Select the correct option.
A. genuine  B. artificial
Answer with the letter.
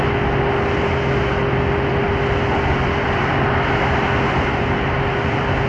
A